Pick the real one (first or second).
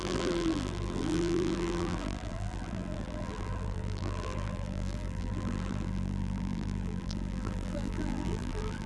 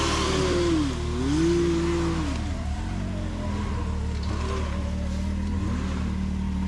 second